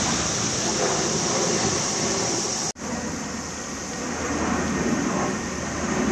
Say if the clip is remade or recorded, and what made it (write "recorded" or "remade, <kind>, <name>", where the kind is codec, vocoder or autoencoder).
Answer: recorded